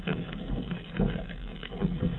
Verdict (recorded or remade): remade